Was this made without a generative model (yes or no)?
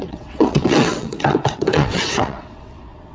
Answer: no